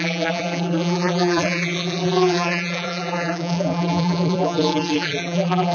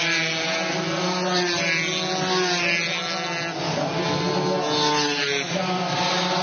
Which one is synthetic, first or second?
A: first